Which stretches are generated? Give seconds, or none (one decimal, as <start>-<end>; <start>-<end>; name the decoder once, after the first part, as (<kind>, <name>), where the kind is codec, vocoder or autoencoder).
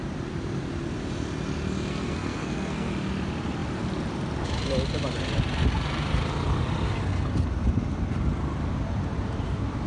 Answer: 1.9-2.9 (codec, SNAC)